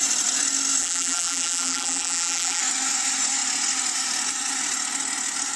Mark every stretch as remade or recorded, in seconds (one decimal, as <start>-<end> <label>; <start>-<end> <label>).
0.0-0.8 recorded; 0.8-2.6 remade; 2.6-5.6 recorded

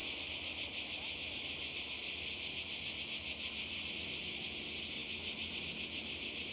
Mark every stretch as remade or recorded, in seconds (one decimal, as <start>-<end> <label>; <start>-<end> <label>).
0.0-6.5 recorded

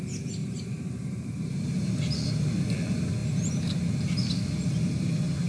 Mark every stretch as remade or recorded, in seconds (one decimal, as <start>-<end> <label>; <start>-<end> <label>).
0.0-0.4 recorded; 0.4-2.6 remade; 2.6-3.2 recorded; 3.2-4.0 remade; 4.0-5.5 recorded

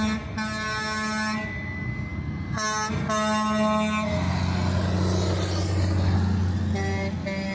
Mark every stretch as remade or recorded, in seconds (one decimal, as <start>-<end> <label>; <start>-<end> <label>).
0.0-7.5 recorded

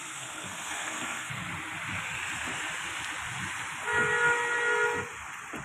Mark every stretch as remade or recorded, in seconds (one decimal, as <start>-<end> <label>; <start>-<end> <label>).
0.0-1.4 remade; 1.4-5.6 recorded

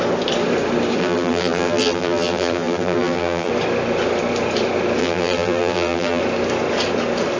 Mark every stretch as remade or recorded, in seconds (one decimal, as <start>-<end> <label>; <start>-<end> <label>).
0.0-1.0 recorded; 1.0-3.5 remade; 3.5-5.0 recorded; 5.0-6.2 remade; 6.2-7.4 recorded

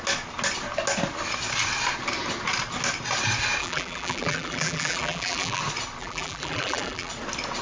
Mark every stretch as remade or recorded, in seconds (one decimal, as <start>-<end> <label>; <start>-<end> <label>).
0.0-3.6 recorded; 3.6-5.6 remade; 5.6-6.0 recorded; 6.0-7.1 remade; 7.1-7.6 recorded